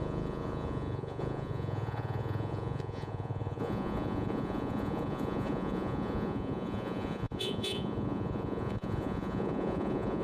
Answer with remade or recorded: remade